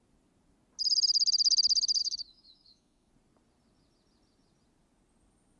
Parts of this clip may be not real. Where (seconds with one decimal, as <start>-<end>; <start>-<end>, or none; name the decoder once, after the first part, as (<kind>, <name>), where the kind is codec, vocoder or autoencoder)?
2.0-3.1 (autoencoder, DAC-VAE)